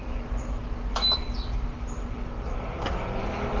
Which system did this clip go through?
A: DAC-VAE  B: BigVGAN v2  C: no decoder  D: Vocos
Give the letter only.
C